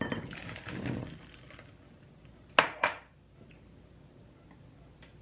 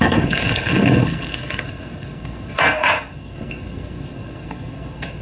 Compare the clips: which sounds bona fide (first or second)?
first